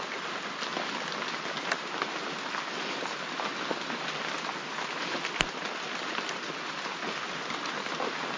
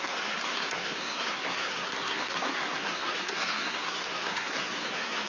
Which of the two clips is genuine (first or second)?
first